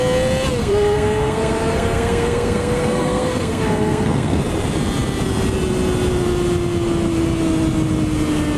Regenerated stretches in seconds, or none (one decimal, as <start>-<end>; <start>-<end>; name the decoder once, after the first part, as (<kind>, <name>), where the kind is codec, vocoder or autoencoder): 0.6-4.4 (codec, SNAC)